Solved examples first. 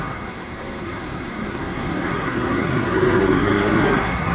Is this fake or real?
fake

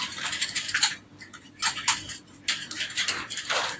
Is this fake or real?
fake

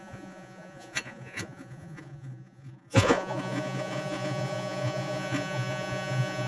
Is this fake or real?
fake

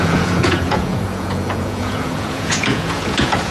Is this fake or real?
fake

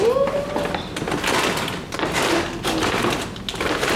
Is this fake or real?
real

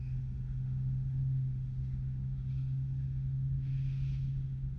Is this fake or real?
fake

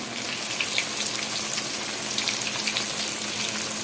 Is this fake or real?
real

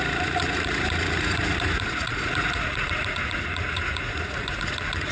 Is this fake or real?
fake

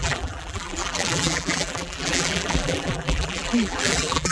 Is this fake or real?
fake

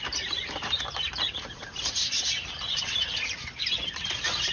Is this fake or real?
fake